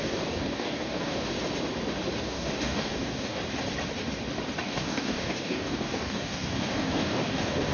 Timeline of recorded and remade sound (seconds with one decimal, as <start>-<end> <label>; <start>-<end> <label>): 0.0-1.3 remade; 1.3-2.2 recorded; 2.2-3.4 remade; 3.4-4.6 recorded; 4.6-7.7 remade